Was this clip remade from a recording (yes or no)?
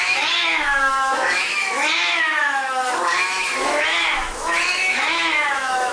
yes